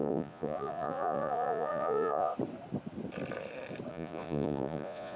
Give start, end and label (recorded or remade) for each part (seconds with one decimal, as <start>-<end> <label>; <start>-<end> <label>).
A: 0.0-2.3 remade; 2.3-3.9 recorded; 3.9-5.2 remade